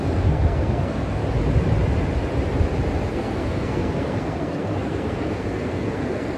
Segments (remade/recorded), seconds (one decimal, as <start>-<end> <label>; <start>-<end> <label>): 0.0-1.2 remade; 1.2-3.1 recorded; 3.1-6.4 remade